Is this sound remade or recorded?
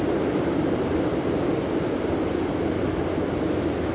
recorded